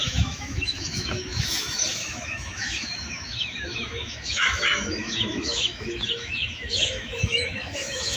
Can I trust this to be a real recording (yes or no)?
no